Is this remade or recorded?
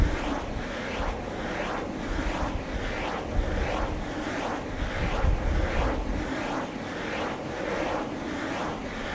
recorded